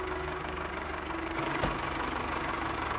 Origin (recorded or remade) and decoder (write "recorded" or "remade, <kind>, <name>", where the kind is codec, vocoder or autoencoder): remade, codec, DAC